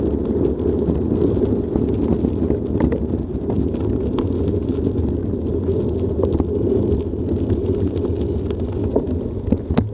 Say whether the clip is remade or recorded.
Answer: recorded